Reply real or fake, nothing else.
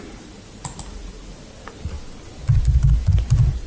real